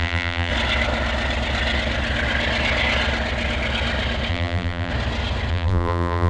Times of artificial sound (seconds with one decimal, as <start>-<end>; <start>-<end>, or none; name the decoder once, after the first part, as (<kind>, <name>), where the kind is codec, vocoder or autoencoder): 0.0-0.5 (vocoder, BigVGAN v2); 4.3-4.9; 5.5-6.3